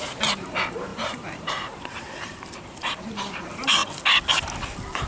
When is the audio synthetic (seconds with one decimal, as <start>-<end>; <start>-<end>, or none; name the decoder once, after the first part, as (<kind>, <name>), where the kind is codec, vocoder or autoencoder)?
0.0-3.8 (vocoder, BigVGAN v2)